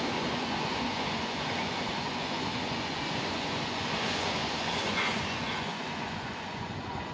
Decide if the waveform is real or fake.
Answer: fake